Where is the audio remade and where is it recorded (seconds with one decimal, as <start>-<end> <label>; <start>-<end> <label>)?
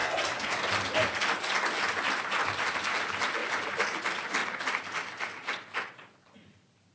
0.0-0.6 remade; 0.6-6.9 recorded